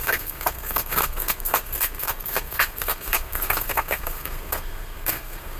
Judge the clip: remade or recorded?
remade